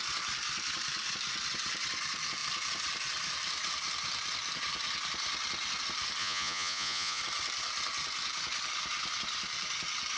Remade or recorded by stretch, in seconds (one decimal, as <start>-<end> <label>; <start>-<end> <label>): 0.0-6.2 recorded; 6.2-7.2 remade; 7.2-10.2 recorded